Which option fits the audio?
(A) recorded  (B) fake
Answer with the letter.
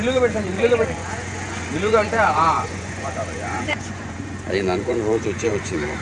B